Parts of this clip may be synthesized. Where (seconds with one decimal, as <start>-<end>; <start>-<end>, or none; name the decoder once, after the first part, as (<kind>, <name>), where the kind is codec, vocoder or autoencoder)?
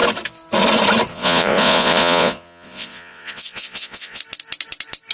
1.1-4.2 (vocoder, Vocos)